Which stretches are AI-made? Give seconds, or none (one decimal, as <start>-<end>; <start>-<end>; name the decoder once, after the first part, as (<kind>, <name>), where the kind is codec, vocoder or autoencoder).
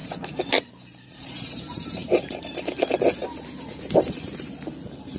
0.6-3.2 (vocoder, BigVGAN v2); 4.1-5.2